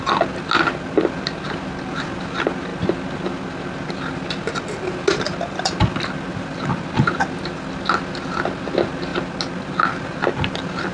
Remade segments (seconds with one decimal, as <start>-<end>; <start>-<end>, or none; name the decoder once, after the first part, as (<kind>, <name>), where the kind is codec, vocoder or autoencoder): none